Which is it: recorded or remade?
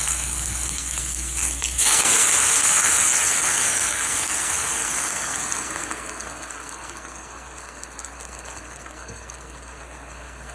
remade